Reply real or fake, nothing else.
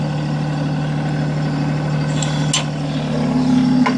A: real